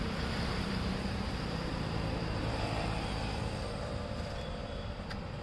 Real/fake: fake